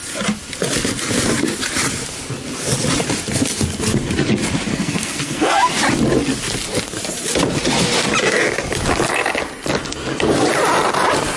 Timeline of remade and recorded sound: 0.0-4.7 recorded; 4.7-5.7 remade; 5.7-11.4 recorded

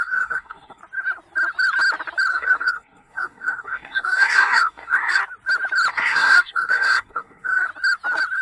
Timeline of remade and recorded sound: 0.0-0.8 remade; 0.8-2.3 recorded; 2.3-5.2 remade; 5.2-5.9 recorded; 5.9-7.7 remade; 7.7-8.4 recorded

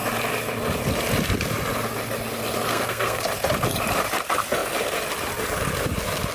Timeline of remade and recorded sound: 0.0-2.7 recorded; 2.7-3.3 remade; 3.3-6.3 recorded